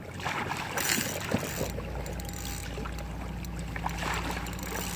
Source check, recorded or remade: recorded